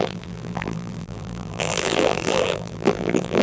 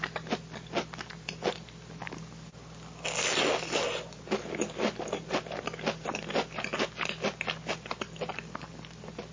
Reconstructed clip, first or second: first